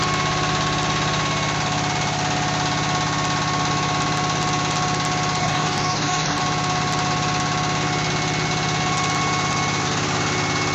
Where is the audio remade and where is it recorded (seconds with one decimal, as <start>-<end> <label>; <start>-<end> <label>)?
0.0-5.4 recorded; 5.4-6.4 remade; 6.4-10.7 recorded